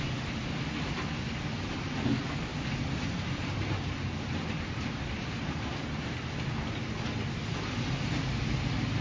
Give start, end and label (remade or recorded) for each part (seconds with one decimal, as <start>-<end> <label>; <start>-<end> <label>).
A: 0.0-2.5 recorded; 2.5-6.3 remade; 6.3-9.0 recorded